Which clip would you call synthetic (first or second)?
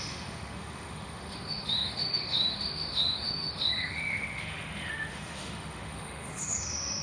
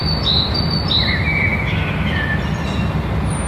first